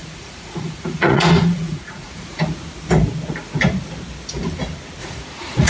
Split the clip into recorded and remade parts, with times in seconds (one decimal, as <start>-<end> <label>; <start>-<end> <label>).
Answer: 0.0-2.4 remade; 2.4-5.0 recorded; 5.0-5.7 remade